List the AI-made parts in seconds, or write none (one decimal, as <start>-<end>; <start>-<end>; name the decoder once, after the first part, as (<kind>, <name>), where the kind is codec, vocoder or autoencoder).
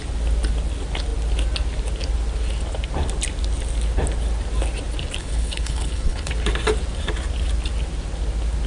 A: 5.2-6.3 (codec, HILCodec)